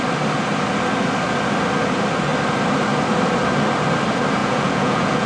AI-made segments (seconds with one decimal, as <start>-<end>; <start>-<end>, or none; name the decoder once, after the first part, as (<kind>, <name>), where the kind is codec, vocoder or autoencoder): 4.4-5.3 (vocoder, Vocos)